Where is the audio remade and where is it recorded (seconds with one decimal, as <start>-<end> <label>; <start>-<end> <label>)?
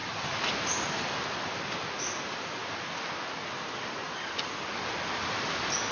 0.0-5.9 recorded